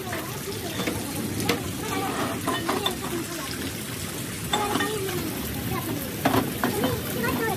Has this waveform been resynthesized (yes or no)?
no